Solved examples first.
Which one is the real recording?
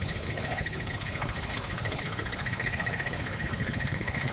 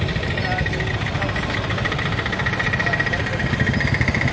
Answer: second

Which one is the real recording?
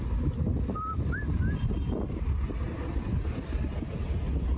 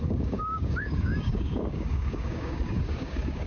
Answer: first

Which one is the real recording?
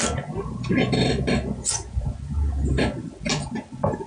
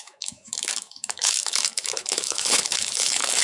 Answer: first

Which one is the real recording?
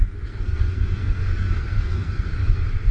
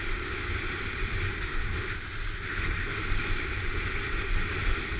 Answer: second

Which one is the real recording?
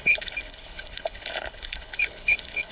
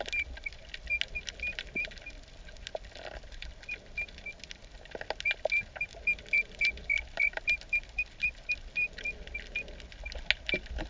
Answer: second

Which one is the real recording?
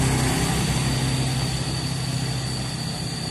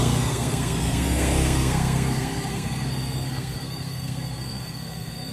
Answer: first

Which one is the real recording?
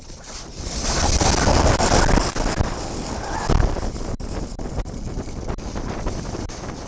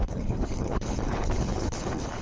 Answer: first